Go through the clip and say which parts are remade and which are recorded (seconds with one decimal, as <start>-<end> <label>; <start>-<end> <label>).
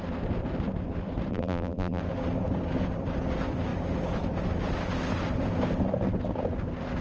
0.0-1.3 recorded; 1.3-2.0 remade; 2.0-7.0 recorded